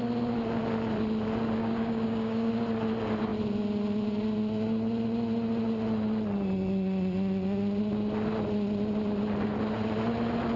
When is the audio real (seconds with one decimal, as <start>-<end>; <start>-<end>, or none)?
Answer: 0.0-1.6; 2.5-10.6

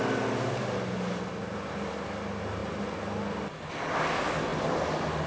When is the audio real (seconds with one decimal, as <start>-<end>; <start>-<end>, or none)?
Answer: 0.0-5.3

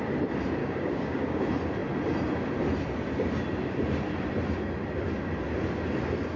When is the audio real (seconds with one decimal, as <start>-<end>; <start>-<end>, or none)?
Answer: 0.0-0.6; 1.4-6.4